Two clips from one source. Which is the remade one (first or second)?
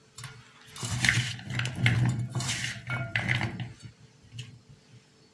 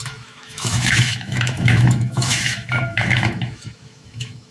second